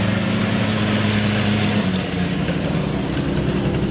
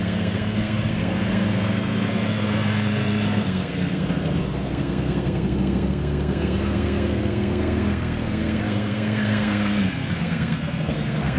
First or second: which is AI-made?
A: second